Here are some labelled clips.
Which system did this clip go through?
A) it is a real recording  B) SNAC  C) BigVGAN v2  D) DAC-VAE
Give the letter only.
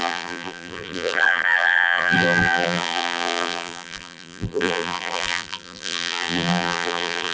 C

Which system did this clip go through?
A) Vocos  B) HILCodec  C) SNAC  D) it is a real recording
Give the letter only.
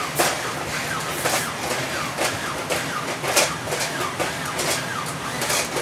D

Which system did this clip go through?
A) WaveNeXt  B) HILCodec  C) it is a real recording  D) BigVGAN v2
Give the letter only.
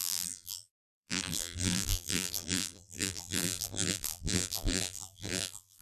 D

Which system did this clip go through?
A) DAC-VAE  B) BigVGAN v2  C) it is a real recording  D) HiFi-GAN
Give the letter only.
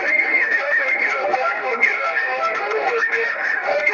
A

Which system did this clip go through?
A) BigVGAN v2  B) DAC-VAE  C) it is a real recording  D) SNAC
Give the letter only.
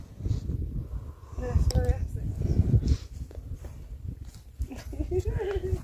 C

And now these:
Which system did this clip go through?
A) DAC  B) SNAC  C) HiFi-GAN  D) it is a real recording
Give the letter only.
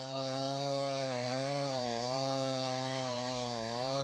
B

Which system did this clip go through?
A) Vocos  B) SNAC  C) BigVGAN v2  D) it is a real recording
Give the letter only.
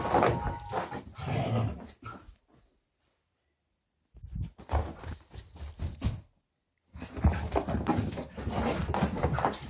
D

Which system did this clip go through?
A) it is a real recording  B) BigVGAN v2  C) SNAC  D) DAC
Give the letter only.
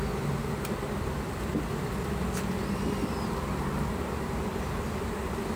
A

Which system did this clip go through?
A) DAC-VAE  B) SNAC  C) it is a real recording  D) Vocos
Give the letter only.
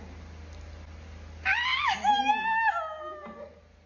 C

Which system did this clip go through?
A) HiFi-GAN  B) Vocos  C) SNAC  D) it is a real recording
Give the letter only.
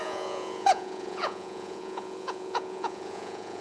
B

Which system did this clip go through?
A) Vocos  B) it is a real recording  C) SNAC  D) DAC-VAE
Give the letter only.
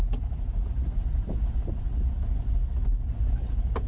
B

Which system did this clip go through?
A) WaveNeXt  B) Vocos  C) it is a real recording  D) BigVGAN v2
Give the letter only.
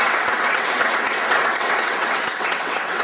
A